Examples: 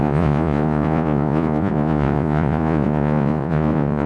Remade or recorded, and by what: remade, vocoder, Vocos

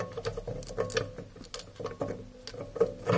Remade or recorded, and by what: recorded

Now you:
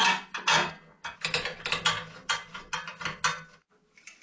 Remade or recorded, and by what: recorded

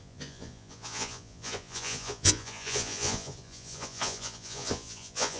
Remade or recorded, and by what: remade, vocoder, Vocos